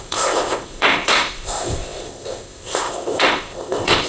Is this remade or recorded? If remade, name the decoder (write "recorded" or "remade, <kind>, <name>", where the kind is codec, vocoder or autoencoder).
remade, codec, ZipCodec